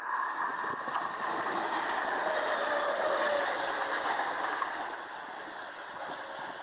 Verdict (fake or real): real